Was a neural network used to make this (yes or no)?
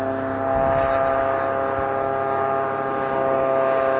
no